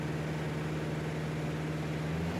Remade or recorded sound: recorded